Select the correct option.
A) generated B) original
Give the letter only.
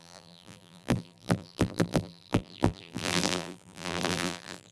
A